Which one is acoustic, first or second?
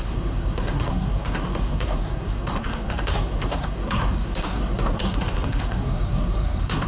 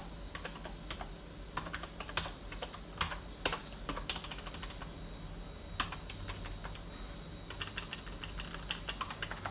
second